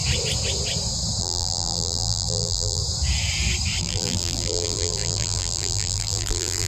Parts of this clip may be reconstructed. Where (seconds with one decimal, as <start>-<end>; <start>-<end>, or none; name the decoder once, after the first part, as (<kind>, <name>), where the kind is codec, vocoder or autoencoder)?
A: 1.2-2.8 (vocoder, BigVGAN v2); 3.8-6.7